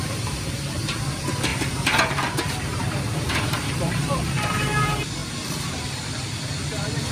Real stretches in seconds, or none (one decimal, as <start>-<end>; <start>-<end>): none